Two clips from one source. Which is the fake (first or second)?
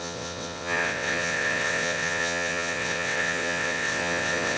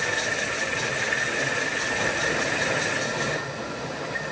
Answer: first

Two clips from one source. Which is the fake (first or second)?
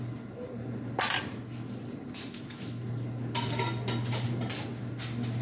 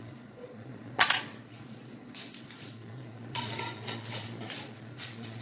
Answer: second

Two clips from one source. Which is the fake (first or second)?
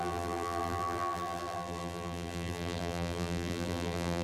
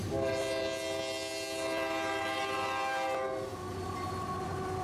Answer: first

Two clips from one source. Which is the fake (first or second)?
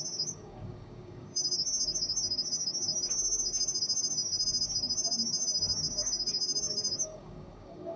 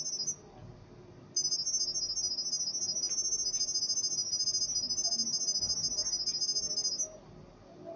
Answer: first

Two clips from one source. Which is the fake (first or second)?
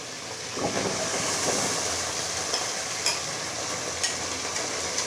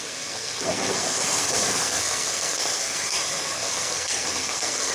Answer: second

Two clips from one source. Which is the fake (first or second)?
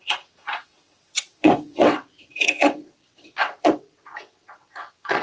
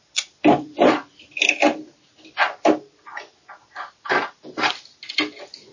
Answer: first